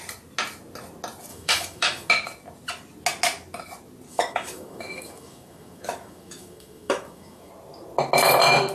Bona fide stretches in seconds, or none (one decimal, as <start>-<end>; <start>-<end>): 0.0-1.3; 2.1-4.1; 7.5-8.7